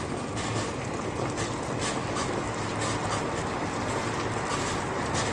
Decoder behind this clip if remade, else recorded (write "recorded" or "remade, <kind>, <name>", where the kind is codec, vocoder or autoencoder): recorded